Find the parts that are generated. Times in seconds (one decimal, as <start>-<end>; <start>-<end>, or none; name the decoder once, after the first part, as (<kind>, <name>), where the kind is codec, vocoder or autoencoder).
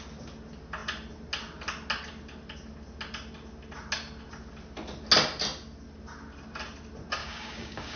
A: 7.2-8.0 (codec, DAC)